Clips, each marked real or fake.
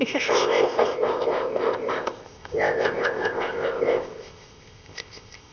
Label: fake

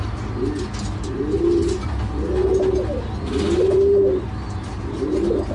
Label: real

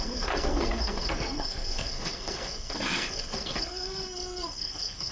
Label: fake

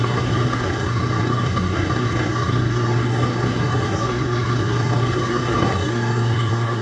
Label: fake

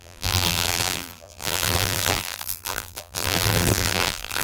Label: fake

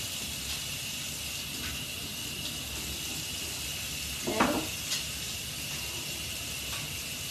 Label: real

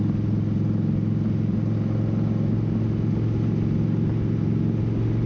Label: real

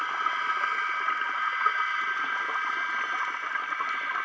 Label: real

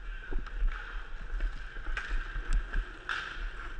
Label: real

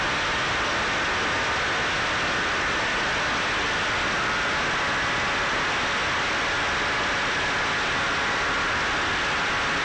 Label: real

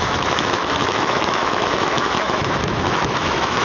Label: fake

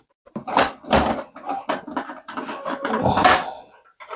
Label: real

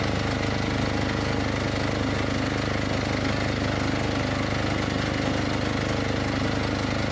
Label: real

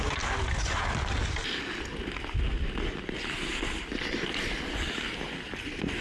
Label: real